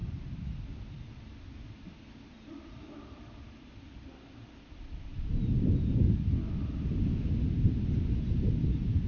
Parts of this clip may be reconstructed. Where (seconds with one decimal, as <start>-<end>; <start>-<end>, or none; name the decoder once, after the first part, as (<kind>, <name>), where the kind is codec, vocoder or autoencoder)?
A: none

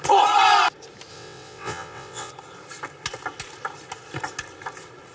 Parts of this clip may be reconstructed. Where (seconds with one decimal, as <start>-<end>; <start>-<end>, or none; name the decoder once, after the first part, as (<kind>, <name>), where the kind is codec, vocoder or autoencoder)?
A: 1.1-2.3 (vocoder, WaveNeXt)

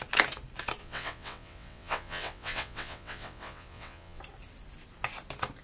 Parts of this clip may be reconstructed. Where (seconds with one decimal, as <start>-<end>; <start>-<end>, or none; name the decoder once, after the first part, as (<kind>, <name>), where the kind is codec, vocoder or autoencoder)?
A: 0.8-4.2 (vocoder, WaveNeXt)

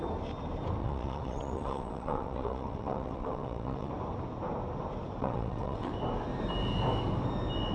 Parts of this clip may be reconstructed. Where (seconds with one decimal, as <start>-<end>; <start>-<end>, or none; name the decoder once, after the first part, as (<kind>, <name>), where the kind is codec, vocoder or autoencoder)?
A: 0.8-3.9 (vocoder, WaveNeXt); 5.2-5.9

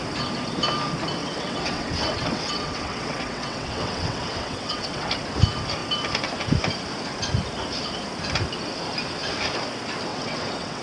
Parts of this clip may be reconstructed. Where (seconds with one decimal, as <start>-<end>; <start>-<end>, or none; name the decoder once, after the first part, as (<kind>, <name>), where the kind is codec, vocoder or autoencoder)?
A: 1.2-5.1 (vocoder, WaveNeXt); 10.1-10.8

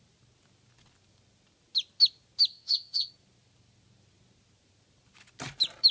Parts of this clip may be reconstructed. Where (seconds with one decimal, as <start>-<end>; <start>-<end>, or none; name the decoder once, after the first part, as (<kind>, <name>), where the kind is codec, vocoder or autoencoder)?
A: 2.5-3.1 (vocoder, WaveNeXt)

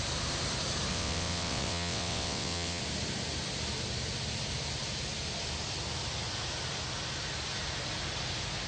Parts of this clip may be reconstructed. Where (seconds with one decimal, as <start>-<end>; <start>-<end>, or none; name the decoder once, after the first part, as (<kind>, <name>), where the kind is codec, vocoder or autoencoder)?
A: 0.9-2.8 (vocoder, WaveNeXt)

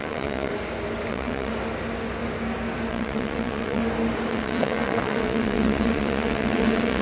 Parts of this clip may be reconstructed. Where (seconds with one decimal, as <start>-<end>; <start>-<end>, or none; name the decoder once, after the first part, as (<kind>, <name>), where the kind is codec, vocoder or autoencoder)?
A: 0.0-0.5 (vocoder, WaveNeXt); 1.1-1.5; 2.9-3.8; 4.3-7.0